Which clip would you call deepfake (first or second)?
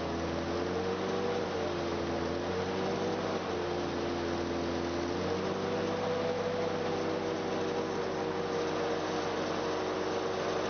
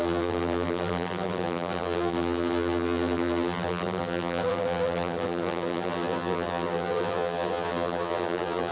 second